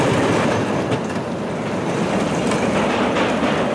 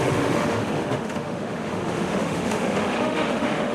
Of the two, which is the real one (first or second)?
first